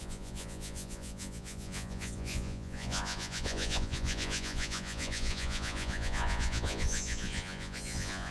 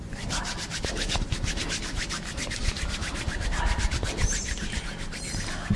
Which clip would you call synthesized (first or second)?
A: first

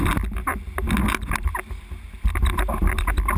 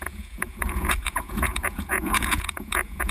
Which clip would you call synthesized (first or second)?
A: second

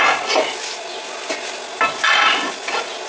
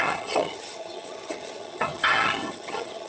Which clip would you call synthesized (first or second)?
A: second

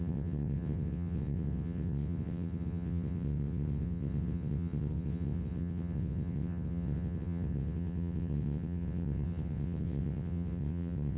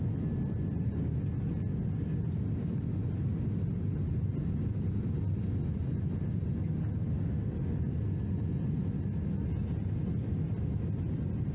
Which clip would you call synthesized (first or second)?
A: first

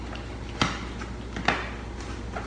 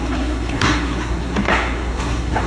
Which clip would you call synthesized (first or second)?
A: second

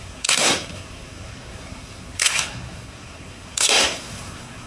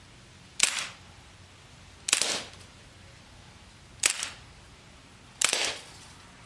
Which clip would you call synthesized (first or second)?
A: first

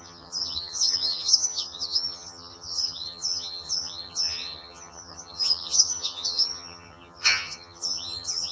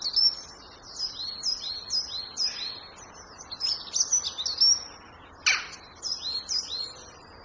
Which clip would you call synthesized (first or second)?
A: first